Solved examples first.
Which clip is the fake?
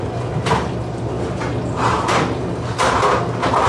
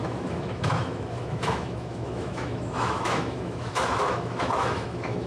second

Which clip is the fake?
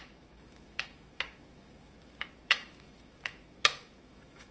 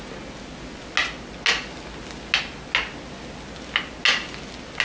first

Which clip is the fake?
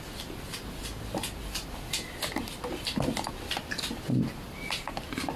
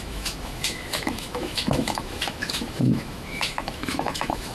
second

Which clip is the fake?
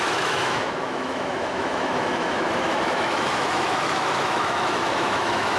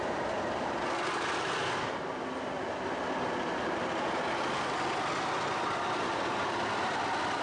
first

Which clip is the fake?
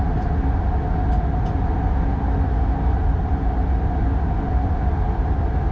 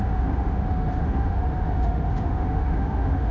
second